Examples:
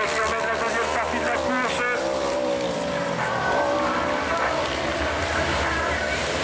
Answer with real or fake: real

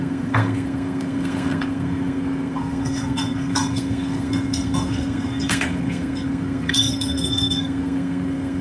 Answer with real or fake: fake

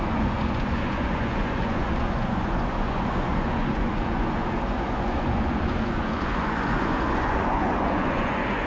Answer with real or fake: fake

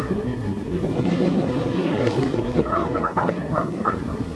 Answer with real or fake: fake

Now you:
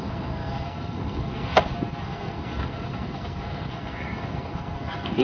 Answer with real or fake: fake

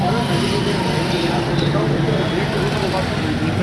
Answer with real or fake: real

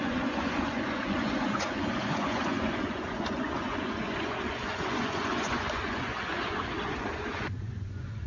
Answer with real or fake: fake